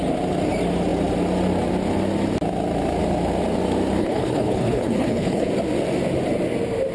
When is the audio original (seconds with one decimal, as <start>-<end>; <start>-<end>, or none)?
0.0-4.0; 5.5-6.9